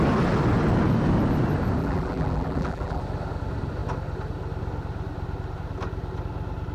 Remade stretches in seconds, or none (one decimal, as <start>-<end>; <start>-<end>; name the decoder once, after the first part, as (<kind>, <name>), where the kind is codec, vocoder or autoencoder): 1.8-3.0 (vocoder, BigVGAN v2)